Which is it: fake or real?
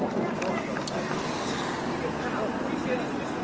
real